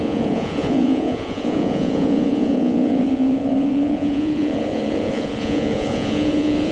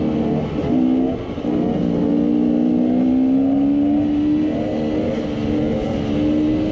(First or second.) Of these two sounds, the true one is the second